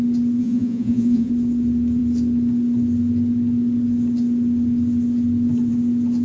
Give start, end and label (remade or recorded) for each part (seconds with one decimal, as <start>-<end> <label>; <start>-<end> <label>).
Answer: 0.0-0.4 recorded; 0.4-1.3 remade; 1.3-6.2 recorded